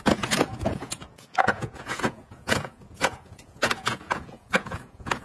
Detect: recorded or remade remade